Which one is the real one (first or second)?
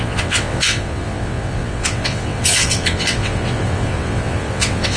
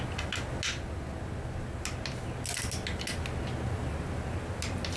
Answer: second